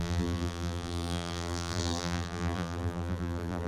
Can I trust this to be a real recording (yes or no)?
no